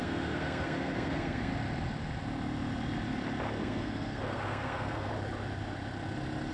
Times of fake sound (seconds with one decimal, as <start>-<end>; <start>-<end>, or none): 0.0-1.5; 3.6-5.1